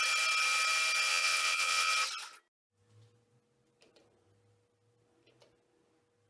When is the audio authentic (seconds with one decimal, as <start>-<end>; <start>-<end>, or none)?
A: 0.0-1.1; 1.9-6.3

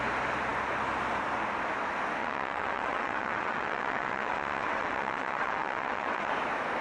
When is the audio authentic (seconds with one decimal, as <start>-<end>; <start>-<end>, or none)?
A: 0.0-2.2; 6.3-6.8

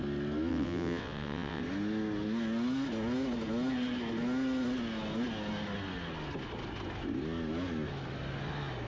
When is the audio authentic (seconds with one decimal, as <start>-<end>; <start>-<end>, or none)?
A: 0.0-0.5; 1.6-8.9

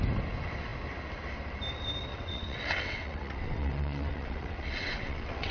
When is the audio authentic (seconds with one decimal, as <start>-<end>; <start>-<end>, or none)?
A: 0.0-2.1

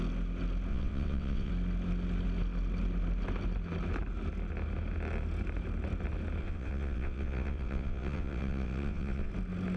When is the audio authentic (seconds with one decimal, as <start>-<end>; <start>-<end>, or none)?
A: 0.0-0.7; 1.5-6.4; 9.3-9.8

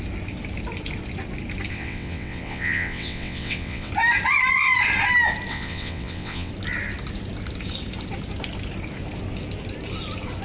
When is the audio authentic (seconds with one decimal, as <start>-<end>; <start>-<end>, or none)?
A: 0.0-1.7; 3.9-5.5; 6.5-10.4

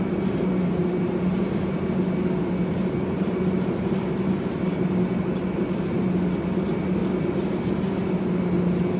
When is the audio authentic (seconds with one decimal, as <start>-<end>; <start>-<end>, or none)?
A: 0.0-9.0